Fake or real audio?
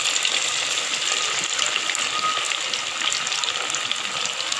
real